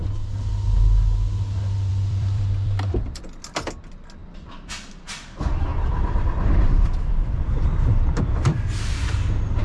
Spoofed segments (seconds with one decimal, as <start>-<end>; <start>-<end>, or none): 1.9-3.2; 4.2-4.9; 5.7-9.6